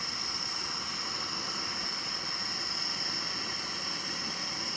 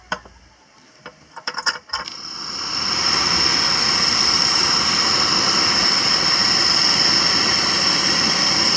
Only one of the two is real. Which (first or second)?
first